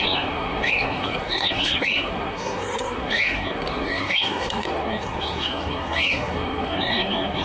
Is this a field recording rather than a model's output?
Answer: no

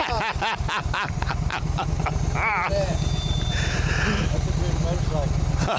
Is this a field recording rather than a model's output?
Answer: no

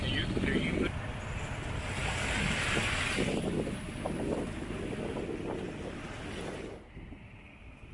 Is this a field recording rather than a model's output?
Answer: yes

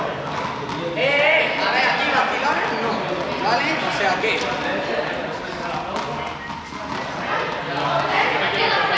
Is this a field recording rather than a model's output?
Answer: yes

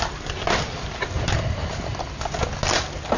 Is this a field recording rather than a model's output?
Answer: yes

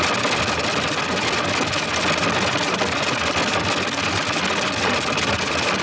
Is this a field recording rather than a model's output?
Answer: no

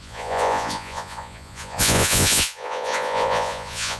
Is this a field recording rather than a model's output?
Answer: no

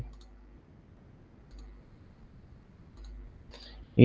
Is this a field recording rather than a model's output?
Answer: yes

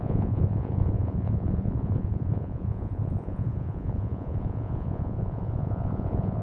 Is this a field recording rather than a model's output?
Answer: no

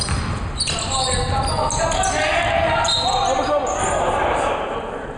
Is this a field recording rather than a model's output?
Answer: yes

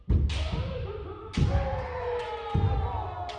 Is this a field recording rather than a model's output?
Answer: yes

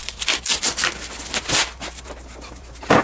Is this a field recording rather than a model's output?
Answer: yes